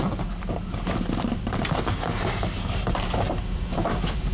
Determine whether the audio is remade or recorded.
remade